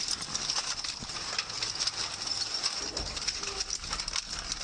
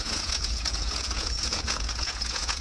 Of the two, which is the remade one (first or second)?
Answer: second